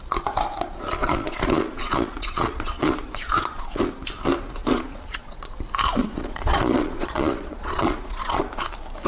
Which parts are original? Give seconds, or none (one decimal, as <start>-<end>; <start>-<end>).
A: 0.0-1.0; 3.8-4.6; 5.5-6.0; 8.4-9.1